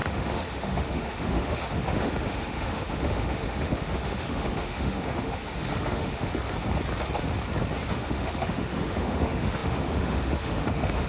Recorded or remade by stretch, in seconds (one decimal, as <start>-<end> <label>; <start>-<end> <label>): 0.0-6.3 remade; 6.3-7.9 recorded; 7.9-11.1 remade